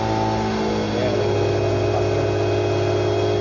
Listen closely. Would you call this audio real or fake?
real